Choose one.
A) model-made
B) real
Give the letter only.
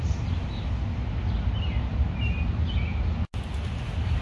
B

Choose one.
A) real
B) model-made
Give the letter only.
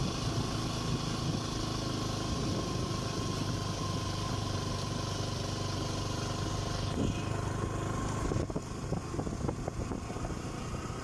A